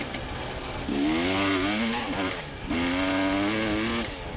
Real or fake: real